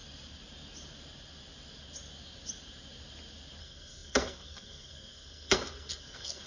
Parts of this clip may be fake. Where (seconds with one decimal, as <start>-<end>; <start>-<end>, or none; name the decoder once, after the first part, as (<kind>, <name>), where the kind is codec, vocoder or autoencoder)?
3.6-6.5 (codec, SNAC)